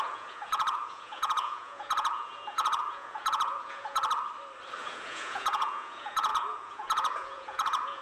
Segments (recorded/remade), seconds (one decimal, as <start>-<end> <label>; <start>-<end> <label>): 0.0-4.0 remade; 4.0-4.8 recorded; 4.8-8.0 remade